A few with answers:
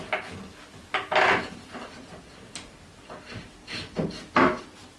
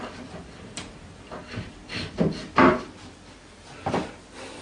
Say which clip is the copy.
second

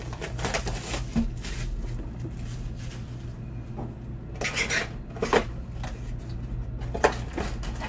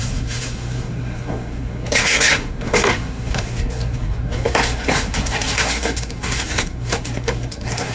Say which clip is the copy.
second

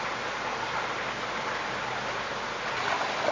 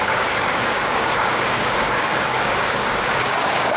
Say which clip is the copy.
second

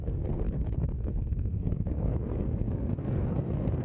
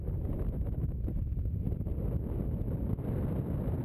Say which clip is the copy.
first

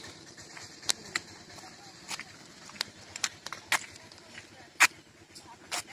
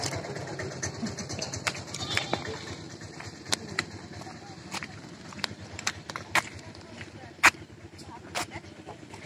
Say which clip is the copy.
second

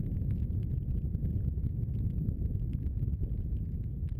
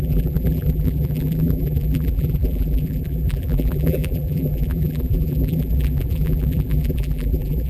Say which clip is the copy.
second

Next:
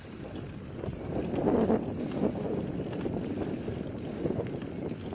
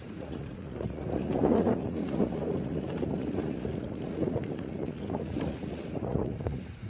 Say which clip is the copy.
second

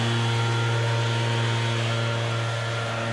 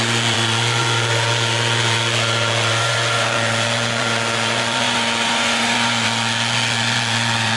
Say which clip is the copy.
second